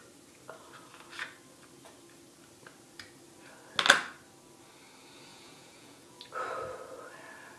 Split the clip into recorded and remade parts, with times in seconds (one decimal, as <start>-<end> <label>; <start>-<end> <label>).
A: 0.0-5.3 recorded; 5.3-6.2 remade; 6.2-7.6 recorded